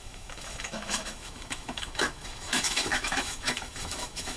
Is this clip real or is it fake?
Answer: fake